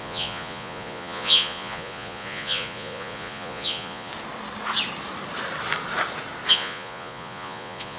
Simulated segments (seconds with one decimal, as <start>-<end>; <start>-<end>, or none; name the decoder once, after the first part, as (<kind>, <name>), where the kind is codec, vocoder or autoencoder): 0.0-4.1 (vocoder, Vocos); 6.5-8.0

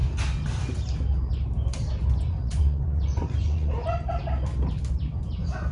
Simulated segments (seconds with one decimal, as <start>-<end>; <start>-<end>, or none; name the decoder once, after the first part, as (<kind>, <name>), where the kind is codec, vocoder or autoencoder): 2.2-3.7 (vocoder, Vocos)

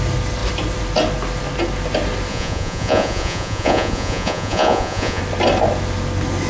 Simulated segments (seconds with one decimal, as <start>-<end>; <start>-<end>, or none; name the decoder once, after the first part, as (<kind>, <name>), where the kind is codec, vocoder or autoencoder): 2.3-5.2 (vocoder, Vocos)